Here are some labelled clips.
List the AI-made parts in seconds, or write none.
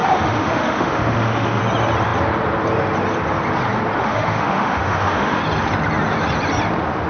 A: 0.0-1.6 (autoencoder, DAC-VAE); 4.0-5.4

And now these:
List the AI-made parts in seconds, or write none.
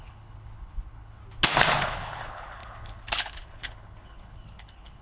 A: 0.0-1.2 (codec, HILCodec); 1.8-5.0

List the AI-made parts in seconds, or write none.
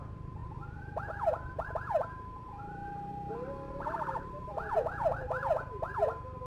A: 0.0-2.8 (vocoder, BigVGAN v2); 3.7-4.5; 5.6-6.5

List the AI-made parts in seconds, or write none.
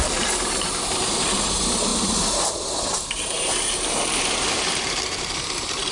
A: 0.0-5.9 (vocoder, BigVGAN v2)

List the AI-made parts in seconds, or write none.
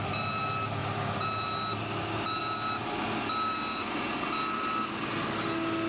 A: none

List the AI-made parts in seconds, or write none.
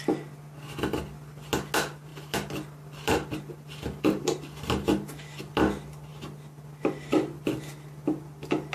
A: 2.1-5.4 (vocoder, BigVGAN v2)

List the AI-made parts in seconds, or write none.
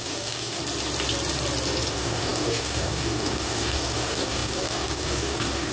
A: 0.0-0.6 (codec, DAC); 1.9-5.7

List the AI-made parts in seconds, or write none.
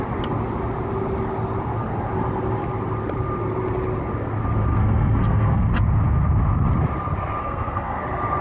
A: 4.7-5.7 (codec, SNAC); 7.4-8.0